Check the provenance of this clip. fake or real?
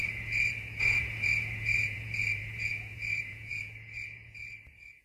fake